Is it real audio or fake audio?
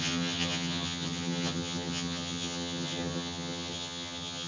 fake